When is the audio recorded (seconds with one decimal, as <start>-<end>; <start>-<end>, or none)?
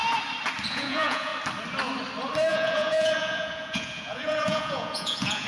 0.0-0.7; 1.3-2.5